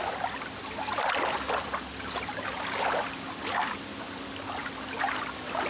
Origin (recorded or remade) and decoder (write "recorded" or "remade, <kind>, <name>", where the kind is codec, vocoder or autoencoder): recorded